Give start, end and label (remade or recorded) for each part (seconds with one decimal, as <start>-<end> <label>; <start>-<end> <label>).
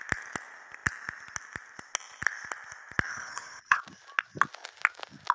0.0-3.1 recorded; 3.1-3.8 remade; 3.8-5.3 recorded